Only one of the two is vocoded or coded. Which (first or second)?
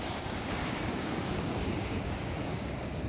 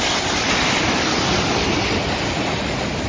first